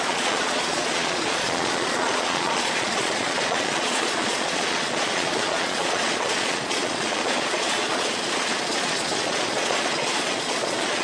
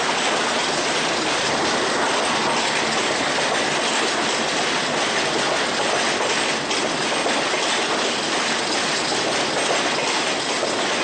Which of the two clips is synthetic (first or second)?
first